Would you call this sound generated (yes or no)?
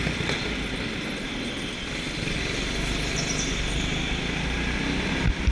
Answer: no